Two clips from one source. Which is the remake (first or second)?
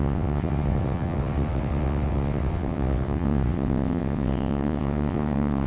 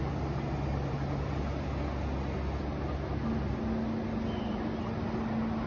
first